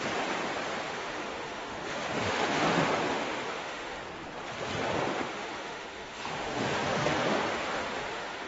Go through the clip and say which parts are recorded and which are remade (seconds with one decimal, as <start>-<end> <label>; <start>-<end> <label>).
0.0-0.8 recorded; 0.8-4.0 remade; 4.0-5.1 recorded; 5.1-8.5 remade